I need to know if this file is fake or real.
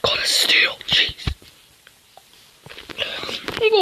fake